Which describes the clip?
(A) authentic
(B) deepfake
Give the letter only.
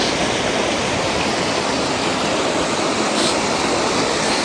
A